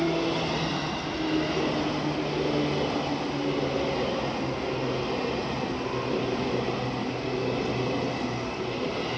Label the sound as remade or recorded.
recorded